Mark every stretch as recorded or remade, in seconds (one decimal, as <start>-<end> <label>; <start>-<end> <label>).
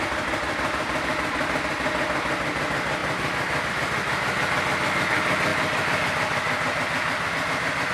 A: 0.0-7.9 recorded